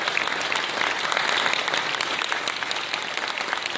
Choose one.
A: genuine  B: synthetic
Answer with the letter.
A